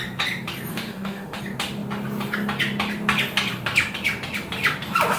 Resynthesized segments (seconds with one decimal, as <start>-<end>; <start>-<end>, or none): 0.7-1.4